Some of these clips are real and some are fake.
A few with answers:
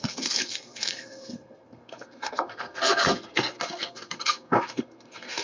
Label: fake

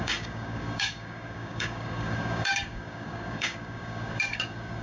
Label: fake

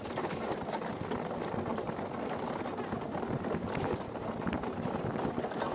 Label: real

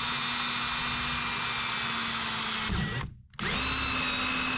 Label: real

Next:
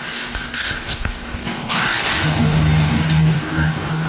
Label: fake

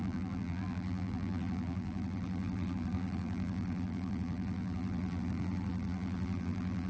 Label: fake